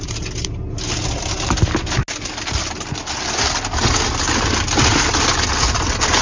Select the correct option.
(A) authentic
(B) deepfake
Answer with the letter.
A